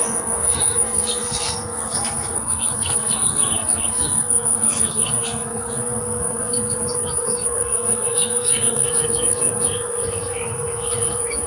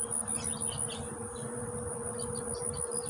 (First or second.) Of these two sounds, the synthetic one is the first